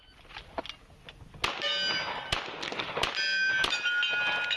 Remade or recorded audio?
recorded